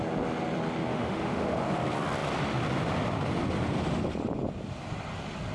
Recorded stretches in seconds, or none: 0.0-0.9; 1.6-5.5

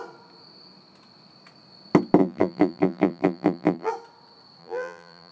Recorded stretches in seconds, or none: 0.0-2.2; 3.9-4.6

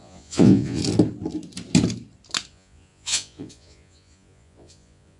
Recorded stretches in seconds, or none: 0.8-2.5

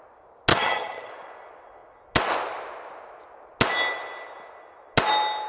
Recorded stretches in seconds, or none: 0.0-0.5; 1.1-5.5

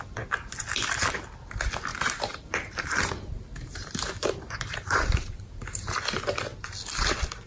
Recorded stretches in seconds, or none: 0.0-1.9; 6.0-7.5